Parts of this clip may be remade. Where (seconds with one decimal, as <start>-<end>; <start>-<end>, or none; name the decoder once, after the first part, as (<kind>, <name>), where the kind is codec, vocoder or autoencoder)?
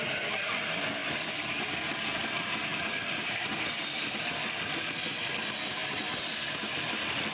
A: 1.0-1.6 (vocoder, BigVGAN v2); 2.7-4.4; 5.8-6.5